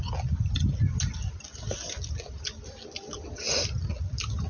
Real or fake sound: real